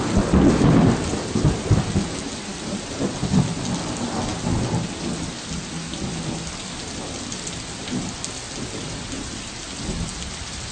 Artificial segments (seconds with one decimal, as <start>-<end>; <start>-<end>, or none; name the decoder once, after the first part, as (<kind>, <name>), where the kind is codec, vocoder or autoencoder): none